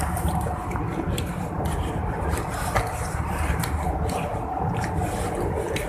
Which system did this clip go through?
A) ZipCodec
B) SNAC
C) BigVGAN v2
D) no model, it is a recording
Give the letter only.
D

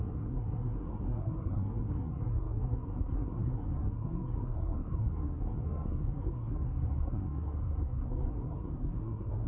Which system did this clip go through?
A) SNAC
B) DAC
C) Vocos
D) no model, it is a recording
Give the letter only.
A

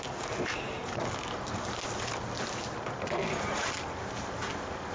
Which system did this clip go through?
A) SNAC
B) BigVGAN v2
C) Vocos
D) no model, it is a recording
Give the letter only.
D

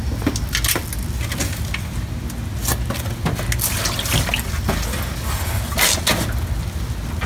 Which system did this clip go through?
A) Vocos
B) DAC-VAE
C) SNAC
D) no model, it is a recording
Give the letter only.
D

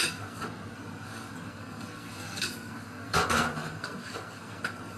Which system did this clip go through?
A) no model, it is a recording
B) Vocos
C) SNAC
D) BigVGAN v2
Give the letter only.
C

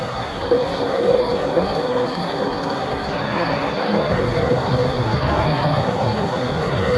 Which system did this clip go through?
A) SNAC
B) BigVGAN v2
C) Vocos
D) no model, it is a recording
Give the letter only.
A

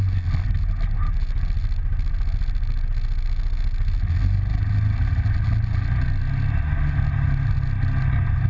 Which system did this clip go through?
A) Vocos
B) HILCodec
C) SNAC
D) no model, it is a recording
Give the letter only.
D